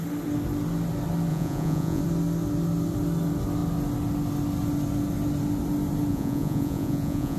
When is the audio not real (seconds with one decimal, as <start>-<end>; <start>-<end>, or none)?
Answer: 1.3-2.0; 6.1-7.4